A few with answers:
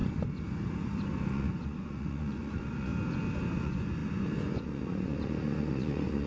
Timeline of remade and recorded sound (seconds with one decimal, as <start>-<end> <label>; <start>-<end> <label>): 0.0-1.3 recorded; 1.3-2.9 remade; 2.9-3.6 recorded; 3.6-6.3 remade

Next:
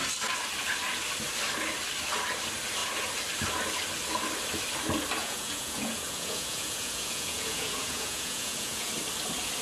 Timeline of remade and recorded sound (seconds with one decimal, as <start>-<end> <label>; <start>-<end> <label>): 0.0-5.2 recorded; 5.2-8.9 remade; 8.9-9.6 recorded

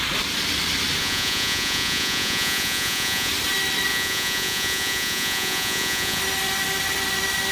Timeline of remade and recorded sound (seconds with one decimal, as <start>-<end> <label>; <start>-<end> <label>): 0.0-1.0 recorded; 1.0-3.3 remade; 3.3-3.9 recorded; 3.9-6.2 remade; 6.2-7.5 recorded